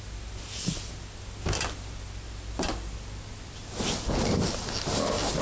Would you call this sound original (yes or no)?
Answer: yes